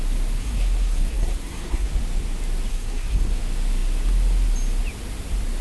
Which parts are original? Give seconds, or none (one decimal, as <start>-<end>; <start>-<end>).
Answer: 0.0-0.4; 1.9-2.7; 3.4-5.6